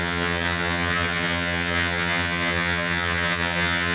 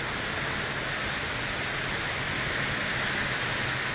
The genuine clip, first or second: second